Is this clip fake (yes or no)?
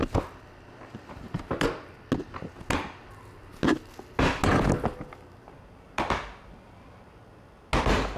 no